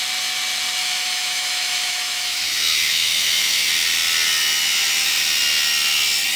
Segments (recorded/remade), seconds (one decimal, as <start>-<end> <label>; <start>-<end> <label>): 0.0-0.8 recorded; 0.8-3.7 remade; 3.7-6.4 recorded